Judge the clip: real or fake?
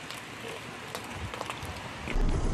real